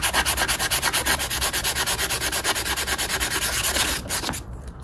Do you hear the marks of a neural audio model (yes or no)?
no